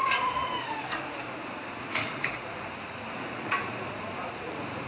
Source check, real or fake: fake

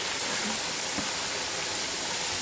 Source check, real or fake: real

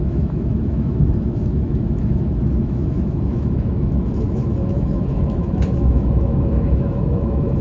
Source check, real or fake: fake